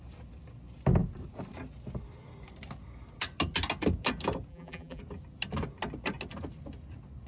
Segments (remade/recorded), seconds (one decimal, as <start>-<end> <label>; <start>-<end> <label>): 0.0-4.5 recorded; 4.5-5.0 remade; 5.0-7.3 recorded